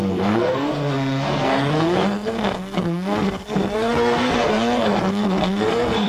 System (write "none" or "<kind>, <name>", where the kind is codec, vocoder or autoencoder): codec, SNAC